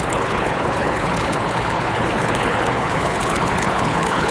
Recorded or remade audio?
remade